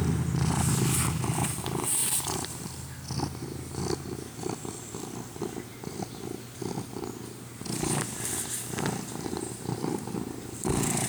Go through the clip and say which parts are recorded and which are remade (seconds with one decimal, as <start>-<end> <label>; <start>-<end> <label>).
0.0-11.1 recorded